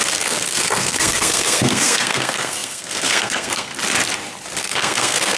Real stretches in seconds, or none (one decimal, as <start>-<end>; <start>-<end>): 3.7-4.6